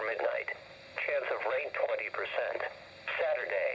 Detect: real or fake fake